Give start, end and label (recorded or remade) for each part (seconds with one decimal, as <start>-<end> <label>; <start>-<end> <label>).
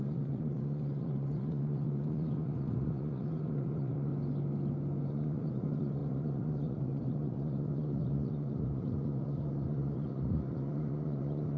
0.0-4.1 remade; 4.1-5.1 recorded; 5.1-11.6 remade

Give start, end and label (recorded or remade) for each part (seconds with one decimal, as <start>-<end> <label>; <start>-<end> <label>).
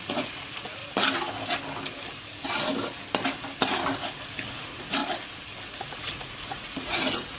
0.0-0.8 remade; 0.8-4.5 recorded; 4.5-5.0 remade; 5.0-5.8 recorded; 5.8-7.4 remade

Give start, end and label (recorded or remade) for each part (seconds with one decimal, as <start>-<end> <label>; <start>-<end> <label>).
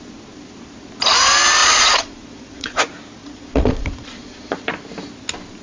0.0-1.6 recorded; 1.6-2.8 remade; 2.8-3.2 recorded; 3.2-4.7 remade; 4.7-5.6 recorded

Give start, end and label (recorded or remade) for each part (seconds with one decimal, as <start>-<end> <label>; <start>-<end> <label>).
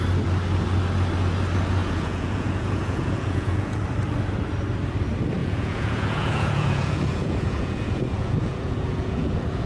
0.0-1.8 recorded; 1.8-3.8 remade; 3.8-5.4 recorded; 5.4-9.7 remade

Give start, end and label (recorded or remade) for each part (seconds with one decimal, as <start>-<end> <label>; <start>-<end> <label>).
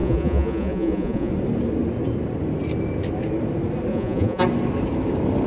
0.0-1.3 remade; 1.3-3.9 recorded; 3.9-4.4 remade; 4.4-5.5 recorded